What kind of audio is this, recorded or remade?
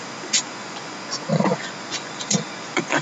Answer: remade